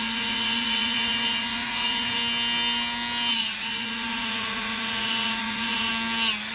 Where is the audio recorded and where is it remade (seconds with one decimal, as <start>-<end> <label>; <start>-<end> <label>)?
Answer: 0.0-2.2 remade; 2.2-3.3 recorded; 3.3-5.9 remade; 5.9-6.5 recorded